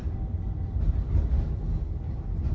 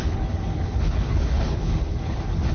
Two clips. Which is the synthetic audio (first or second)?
second